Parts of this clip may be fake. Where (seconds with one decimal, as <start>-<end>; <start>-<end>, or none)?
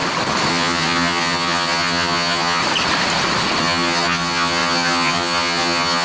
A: 0.5-2.6; 3.6-6.0